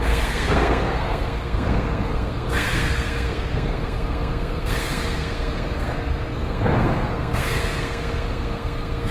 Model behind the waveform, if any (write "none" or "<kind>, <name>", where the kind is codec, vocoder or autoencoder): codec, SNAC